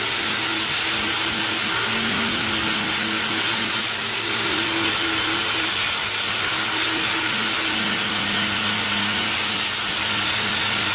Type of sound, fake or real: real